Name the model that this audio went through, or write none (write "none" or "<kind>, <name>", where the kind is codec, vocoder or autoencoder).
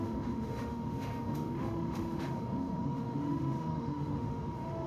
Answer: autoencoder, DAC-VAE